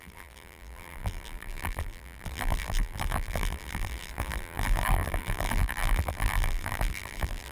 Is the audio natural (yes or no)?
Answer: no